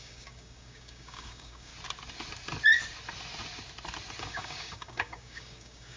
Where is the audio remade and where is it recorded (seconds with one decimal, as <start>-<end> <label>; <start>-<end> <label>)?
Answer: 0.0-1.7 remade; 1.7-4.2 recorded; 4.2-6.0 remade